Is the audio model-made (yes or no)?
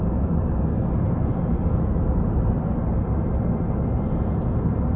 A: no